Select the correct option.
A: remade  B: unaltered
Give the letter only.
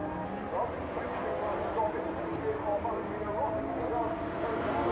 B